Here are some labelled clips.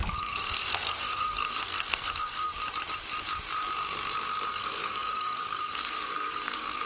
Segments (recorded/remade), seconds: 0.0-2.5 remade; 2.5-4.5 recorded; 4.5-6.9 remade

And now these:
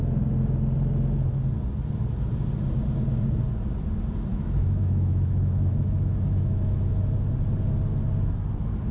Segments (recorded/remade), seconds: 0.0-4.3 recorded; 4.3-7.0 remade; 7.0-8.9 recorded

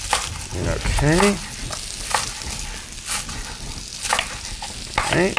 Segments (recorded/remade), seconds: 0.0-5.4 recorded

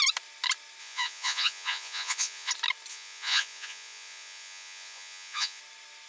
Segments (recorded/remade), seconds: 0.0-0.8 recorded; 0.8-2.5 remade; 2.5-2.9 recorded; 2.9-5.6 remade; 5.6-6.1 recorded

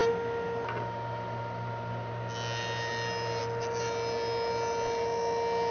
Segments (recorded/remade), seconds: 0.0-5.7 recorded

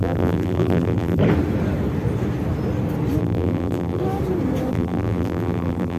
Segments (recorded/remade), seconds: 0.0-1.2 remade; 1.2-3.2 recorded; 3.2-4.0 remade; 4.0-4.7 recorded; 4.7-6.0 remade